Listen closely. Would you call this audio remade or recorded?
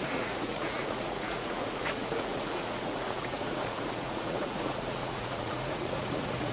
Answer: remade